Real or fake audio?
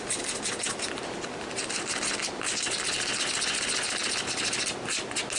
real